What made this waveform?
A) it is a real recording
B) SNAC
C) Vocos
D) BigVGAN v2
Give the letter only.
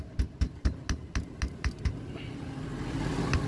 A